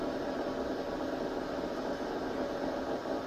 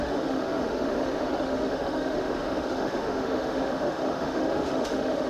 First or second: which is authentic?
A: first